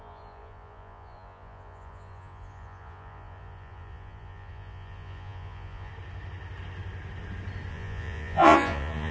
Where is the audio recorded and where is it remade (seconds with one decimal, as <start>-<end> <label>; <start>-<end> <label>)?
0.0-5.9 remade; 5.9-7.7 recorded; 7.7-9.1 remade